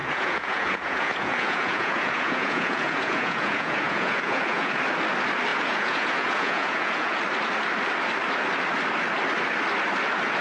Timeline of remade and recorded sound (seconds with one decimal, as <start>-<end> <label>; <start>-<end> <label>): 0.0-4.8 remade; 4.8-5.5 recorded; 5.5-7.2 remade; 7.2-10.4 recorded